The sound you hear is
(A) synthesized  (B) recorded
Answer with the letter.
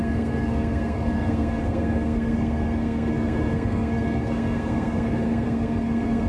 A